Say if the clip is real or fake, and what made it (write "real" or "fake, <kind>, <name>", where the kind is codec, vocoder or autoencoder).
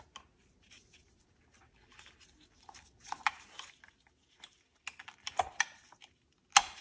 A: real